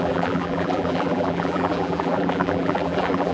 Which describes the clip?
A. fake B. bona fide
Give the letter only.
A